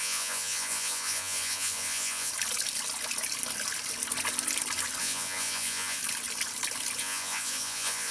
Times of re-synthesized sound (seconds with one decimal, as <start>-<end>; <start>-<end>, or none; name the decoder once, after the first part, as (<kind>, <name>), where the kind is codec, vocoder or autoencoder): 0.0-2.3 (vocoder, Vocos); 5.0-6.0; 7.0-8.1

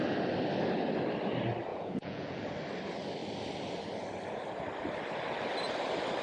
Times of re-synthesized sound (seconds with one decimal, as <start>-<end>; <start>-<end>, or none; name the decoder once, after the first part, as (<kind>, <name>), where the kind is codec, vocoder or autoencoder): 1.7-2.5 (vocoder, Vocos)

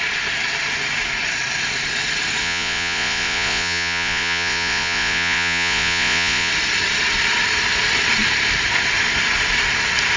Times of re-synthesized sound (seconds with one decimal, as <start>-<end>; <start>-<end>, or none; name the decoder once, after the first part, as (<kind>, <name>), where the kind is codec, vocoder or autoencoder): 2.4-6.5 (vocoder, Vocos)

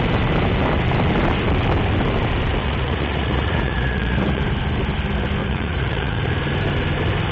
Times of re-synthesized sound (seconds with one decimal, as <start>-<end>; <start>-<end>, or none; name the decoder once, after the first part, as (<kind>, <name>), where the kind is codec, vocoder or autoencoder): 2.6-4.4 (vocoder, Vocos); 5.4-6.3